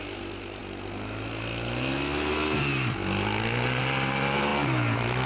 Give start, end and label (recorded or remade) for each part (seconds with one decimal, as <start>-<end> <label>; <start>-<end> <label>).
0.0-5.3 recorded